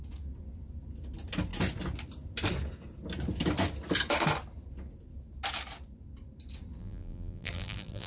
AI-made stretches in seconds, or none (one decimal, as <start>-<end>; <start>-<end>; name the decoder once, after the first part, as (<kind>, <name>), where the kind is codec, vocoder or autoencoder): 6.8-8.1 (vocoder, BigVGAN v2)